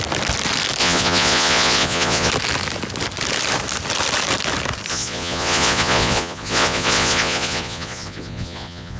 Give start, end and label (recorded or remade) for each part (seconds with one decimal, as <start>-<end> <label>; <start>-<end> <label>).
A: 0.0-0.8 recorded; 0.8-2.3 remade; 2.3-4.9 recorded; 4.9-9.0 remade

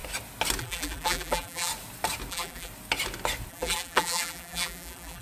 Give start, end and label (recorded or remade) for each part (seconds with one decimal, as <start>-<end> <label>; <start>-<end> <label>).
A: 0.0-0.6 recorded; 0.6-1.7 remade; 1.7-2.3 recorded; 2.3-2.7 remade; 2.7-3.5 recorded; 3.5-5.2 remade

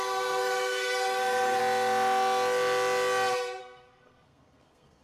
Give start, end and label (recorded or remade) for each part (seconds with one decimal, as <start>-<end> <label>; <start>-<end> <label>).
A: 0.0-1.6 remade; 1.6-3.6 recorded; 3.6-5.0 remade

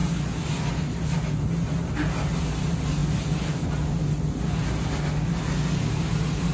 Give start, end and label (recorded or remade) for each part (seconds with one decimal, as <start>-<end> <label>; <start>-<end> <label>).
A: 0.0-6.5 recorded

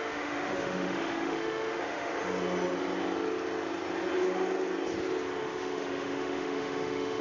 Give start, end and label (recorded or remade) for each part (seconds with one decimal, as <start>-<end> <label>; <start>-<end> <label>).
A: 0.0-2.1 remade; 2.1-5.4 recorded; 5.4-7.2 remade

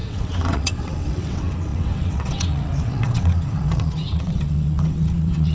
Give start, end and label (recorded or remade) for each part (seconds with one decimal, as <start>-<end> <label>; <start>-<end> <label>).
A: 0.0-5.5 remade

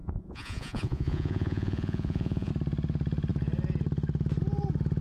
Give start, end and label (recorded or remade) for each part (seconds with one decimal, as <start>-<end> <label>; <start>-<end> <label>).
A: 0.0-2.5 remade; 2.5-5.0 recorded

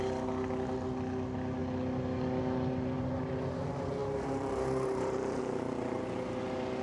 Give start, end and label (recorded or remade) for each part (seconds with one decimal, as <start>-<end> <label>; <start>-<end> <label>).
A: 0.0-4.0 recorded; 4.0-5.4 remade; 5.4-6.8 recorded